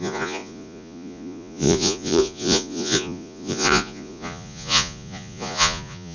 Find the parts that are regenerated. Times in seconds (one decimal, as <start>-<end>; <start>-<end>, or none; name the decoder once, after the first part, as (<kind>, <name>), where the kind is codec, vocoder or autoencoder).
0.0-6.1 (vocoder, Vocos)